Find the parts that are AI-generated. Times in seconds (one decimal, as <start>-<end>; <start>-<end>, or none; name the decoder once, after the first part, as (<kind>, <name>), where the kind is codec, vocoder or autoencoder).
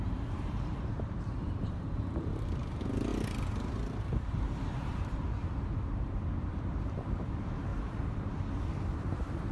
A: 0.0-3.1 (vocoder, BigVGAN v2); 4.0-7.7; 8.6-9.5